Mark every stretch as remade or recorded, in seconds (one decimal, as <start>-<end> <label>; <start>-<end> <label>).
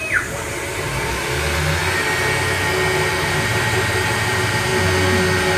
0.0-1.1 remade; 1.1-3.2 recorded; 3.2-4.7 remade; 4.7-5.6 recorded